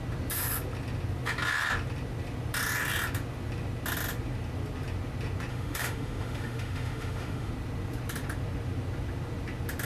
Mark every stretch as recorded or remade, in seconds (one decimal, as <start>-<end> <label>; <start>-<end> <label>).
0.0-5.5 recorded; 5.5-7.5 remade; 7.5-9.8 recorded